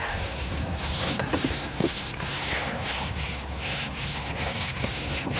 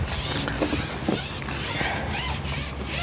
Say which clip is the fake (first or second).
first